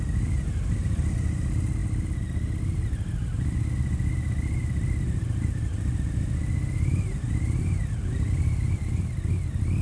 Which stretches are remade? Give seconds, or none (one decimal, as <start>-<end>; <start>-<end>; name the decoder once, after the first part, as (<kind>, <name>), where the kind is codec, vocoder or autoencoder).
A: none

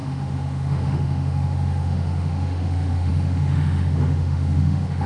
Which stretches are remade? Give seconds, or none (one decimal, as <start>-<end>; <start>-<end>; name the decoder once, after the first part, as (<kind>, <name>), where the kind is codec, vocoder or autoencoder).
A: 0.0-5.1 (autoencoder, DAC-VAE)

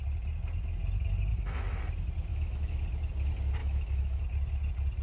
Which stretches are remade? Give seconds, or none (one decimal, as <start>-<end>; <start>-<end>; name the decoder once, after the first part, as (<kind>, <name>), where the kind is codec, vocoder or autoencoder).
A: 1.3-1.8 (autoencoder, DAC-VAE); 2.3-2.8; 3.6-4.2

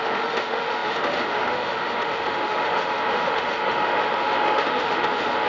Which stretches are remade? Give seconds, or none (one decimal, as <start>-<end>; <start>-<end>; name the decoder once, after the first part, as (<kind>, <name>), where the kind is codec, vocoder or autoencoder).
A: 0.0-5.5 (autoencoder, DAC-VAE)

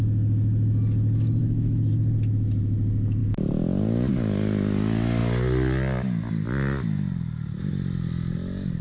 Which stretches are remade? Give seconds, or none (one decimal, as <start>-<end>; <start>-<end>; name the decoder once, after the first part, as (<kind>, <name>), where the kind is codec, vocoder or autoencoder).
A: 1.4-1.9 (autoencoder, DAC-VAE)